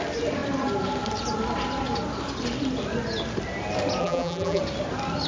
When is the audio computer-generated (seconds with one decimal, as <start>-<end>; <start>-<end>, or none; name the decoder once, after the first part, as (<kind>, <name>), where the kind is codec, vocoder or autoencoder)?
4.0-4.6 (vocoder, BigVGAN v2)